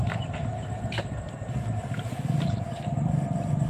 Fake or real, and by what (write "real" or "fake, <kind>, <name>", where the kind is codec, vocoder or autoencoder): fake, vocoder, BigVGAN v2